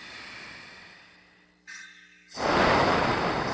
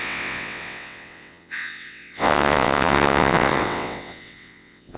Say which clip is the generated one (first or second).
second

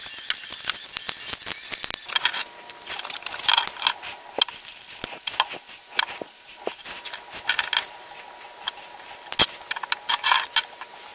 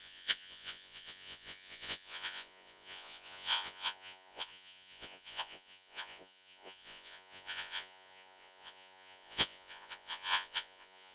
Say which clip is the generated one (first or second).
second